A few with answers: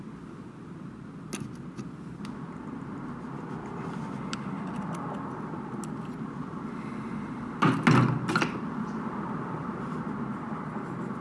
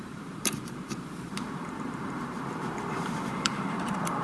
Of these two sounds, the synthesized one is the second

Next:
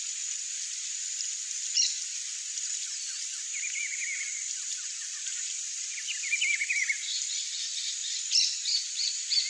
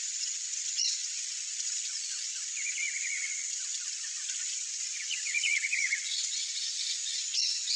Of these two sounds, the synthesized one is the second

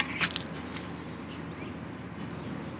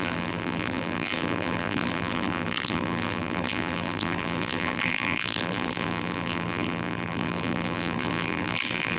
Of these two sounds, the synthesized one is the second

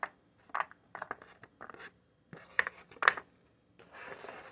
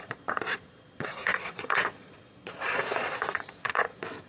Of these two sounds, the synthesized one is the second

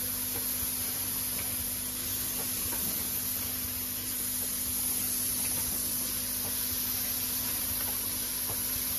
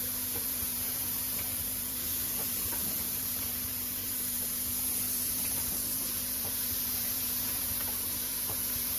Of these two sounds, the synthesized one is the second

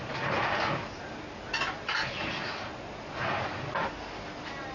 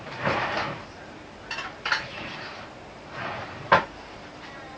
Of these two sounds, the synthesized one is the second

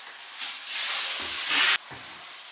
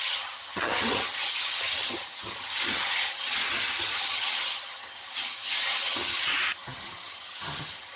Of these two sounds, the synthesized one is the second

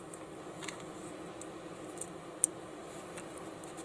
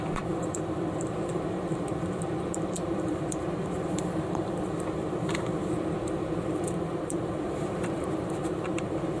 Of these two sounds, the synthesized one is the second